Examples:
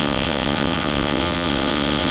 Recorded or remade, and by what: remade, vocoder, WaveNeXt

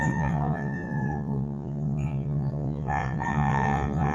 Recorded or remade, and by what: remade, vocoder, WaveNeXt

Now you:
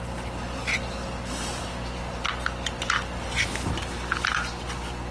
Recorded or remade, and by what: recorded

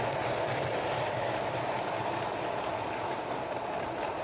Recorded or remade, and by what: recorded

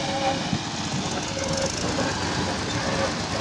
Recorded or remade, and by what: recorded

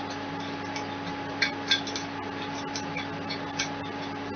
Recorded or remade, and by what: recorded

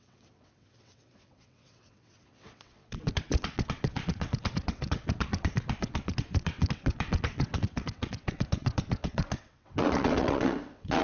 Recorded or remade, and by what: remade, vocoder, WaveNeXt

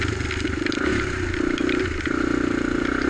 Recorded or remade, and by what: recorded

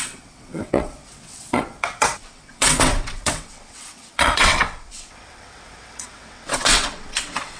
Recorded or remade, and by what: remade, vocoder, WaveNeXt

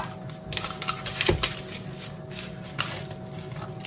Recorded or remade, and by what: recorded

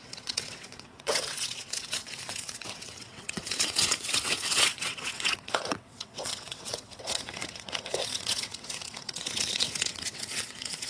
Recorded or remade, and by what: remade, vocoder, WaveNeXt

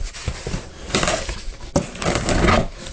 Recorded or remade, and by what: recorded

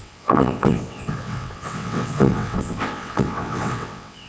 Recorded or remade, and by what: remade, vocoder, WaveNeXt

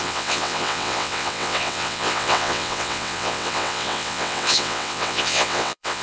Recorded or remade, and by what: remade, vocoder, WaveNeXt